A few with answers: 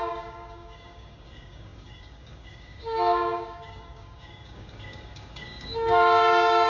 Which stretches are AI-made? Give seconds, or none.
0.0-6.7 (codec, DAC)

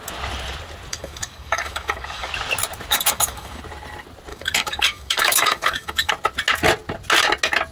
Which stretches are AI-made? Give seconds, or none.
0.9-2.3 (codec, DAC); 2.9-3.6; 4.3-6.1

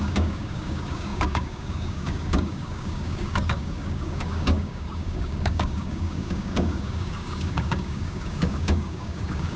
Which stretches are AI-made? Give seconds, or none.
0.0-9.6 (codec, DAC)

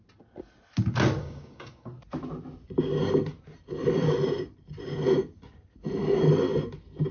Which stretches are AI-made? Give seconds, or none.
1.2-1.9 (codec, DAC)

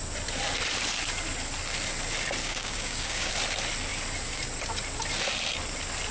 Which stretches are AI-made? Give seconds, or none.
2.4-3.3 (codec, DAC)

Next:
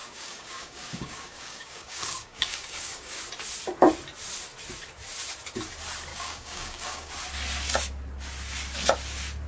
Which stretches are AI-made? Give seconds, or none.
0.0-3.2 (codec, DAC); 6.1-7.1